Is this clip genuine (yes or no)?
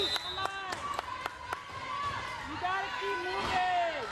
yes